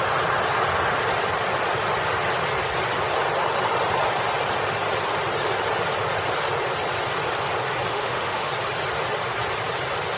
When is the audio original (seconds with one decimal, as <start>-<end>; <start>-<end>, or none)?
0.0-7.9; 8.5-10.2